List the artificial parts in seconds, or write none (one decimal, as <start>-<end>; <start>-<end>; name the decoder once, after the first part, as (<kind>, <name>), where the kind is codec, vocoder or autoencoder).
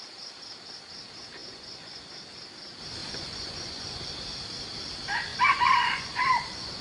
1.4-2.0 (vocoder, Vocos); 3.0-4.1; 5.3-6.8